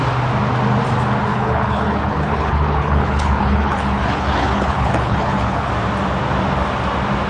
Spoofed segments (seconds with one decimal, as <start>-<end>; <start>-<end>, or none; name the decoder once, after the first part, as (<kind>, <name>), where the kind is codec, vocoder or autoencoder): 1.3-5.7 (codec, HILCodec)